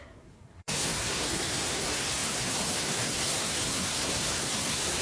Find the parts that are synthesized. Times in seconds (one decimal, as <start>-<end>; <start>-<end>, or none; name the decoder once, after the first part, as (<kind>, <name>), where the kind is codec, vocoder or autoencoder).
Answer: 0.0-5.0 (codec, SNAC)